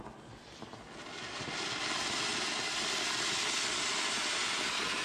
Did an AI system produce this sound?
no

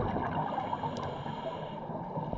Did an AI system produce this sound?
no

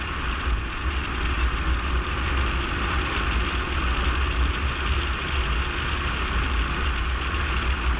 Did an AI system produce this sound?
no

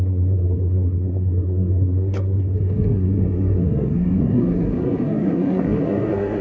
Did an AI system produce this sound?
yes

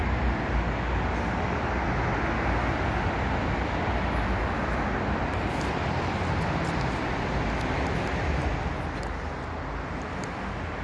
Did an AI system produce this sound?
no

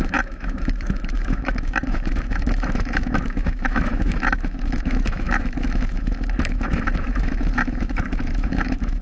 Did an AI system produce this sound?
yes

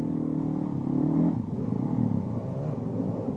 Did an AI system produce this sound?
yes